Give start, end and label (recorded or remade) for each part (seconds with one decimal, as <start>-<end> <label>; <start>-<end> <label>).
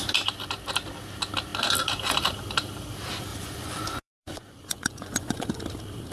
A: 0.0-3.3 recorded; 3.3-5.6 remade; 5.6-6.1 recorded